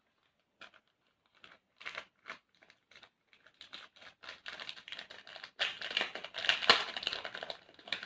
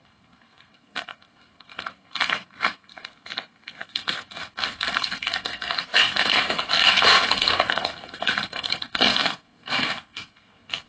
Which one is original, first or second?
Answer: first